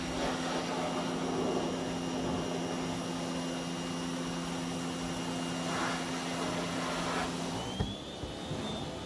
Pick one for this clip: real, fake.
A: real